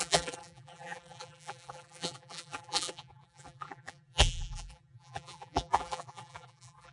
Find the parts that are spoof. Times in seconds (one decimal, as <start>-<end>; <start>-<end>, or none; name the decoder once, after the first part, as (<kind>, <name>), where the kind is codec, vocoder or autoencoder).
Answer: 0.0-6.9 (vocoder, BigVGAN v2)